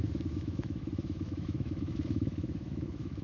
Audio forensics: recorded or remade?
remade